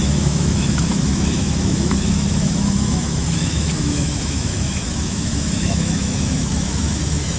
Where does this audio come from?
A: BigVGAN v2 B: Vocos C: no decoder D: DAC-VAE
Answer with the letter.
D